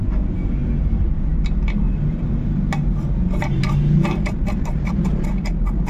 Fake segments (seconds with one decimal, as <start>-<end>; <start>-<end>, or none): none